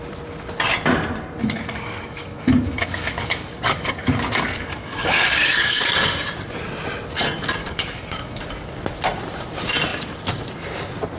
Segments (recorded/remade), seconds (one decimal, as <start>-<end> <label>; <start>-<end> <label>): 0.0-1.4 recorded; 1.4-5.8 remade; 5.8-7.6 recorded; 7.6-8.4 remade; 8.4-11.2 recorded